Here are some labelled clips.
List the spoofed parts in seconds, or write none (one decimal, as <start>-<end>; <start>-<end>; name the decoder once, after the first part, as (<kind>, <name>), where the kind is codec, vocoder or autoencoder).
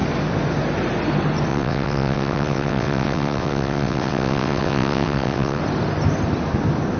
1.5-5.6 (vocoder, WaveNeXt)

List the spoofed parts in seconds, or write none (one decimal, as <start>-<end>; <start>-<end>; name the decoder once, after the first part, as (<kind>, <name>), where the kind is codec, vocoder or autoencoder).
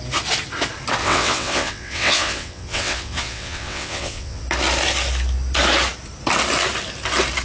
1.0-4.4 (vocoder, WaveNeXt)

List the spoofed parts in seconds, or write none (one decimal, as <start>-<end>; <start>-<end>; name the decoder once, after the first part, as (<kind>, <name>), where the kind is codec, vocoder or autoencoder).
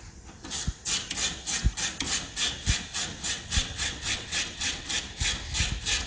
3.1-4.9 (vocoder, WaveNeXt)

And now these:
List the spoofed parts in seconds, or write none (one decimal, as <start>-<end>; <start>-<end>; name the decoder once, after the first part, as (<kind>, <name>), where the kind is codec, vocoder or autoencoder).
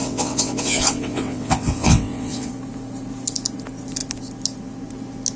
0.0-2.5 (vocoder, WaveNeXt)